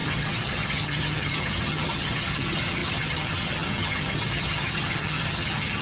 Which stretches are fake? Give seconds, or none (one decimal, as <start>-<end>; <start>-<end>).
0.0-5.8